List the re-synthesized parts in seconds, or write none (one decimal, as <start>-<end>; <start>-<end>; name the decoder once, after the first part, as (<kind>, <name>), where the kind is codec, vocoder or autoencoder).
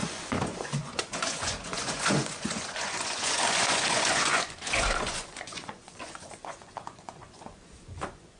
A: 0.0-8.4 (vocoder, Vocos)